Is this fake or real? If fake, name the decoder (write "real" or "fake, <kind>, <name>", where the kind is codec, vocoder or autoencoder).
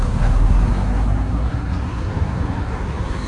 fake, codec, SNAC